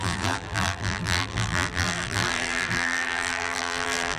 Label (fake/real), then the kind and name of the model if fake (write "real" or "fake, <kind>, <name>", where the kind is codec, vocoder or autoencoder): fake, vocoder, BigVGAN v2